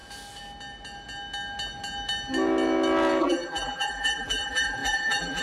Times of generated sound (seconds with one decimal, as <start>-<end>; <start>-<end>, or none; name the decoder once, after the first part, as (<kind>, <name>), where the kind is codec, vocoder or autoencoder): 3.2-5.4 (vocoder, BigVGAN v2)